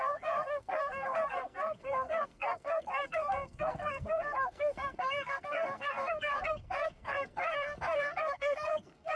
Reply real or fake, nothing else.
fake